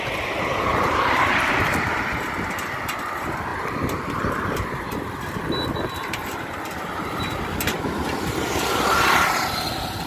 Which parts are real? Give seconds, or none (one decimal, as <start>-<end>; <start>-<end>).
0.0-0.7; 1.5-3.5; 4.2-10.1